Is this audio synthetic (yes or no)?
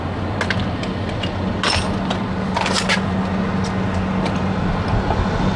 no